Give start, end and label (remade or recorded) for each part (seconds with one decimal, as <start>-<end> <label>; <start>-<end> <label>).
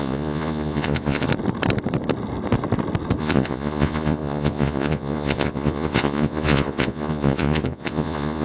0.0-1.3 remade; 1.3-3.2 recorded; 3.2-8.4 remade